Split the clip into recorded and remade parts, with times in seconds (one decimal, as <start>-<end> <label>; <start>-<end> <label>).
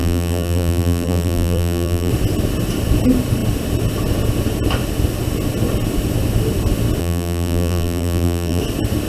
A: 0.0-2.1 remade; 2.1-7.0 recorded; 7.0-8.6 remade; 8.6-9.1 recorded